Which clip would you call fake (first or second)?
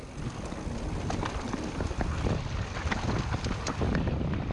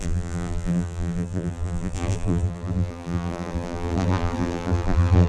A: second